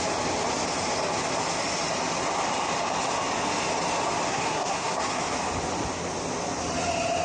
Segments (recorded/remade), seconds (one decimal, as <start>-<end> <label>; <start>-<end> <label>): 0.0-4.3 recorded; 4.3-5.2 remade; 5.2-7.2 recorded